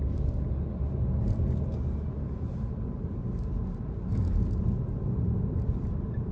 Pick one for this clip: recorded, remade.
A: recorded